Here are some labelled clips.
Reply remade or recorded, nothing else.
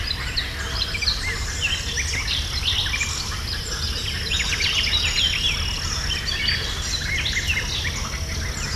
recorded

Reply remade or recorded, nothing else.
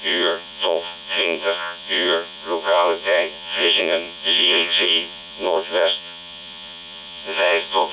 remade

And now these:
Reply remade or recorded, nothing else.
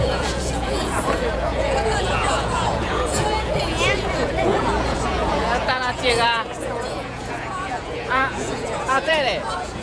remade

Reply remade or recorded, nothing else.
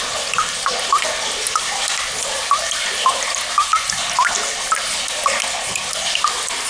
recorded